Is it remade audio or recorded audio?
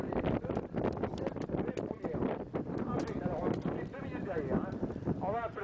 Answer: recorded